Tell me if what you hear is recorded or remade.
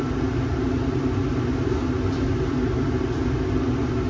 recorded